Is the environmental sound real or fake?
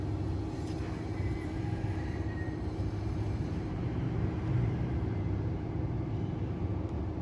fake